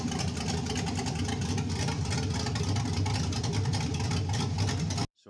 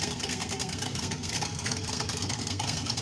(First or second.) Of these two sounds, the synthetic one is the second